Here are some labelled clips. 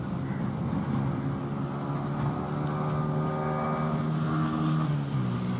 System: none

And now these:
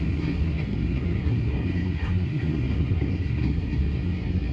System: codec, SNAC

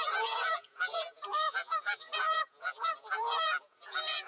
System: vocoder, Vocos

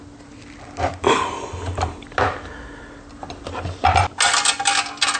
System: none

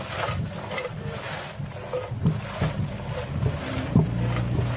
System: none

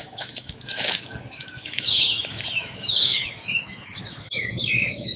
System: autoencoder, DAC-VAE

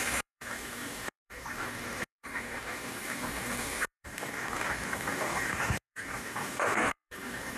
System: codec, DAC